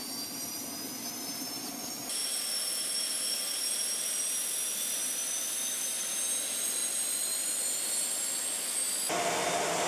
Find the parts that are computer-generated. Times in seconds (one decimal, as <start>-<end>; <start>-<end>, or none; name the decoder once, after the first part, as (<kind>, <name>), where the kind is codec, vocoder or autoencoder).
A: none